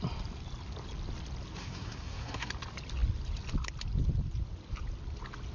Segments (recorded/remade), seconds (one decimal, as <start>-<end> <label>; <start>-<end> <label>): 0.0-1.6 recorded; 1.6-2.5 remade; 2.5-5.5 recorded